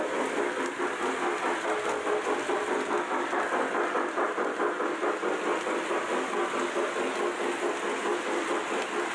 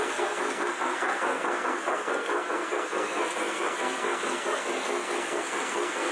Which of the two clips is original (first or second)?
first